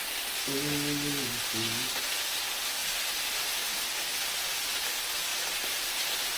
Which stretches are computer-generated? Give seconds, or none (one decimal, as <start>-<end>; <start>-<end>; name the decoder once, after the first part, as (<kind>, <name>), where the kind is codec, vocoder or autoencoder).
2.8-3.7 (vocoder, BigVGAN v2); 5.3-6.4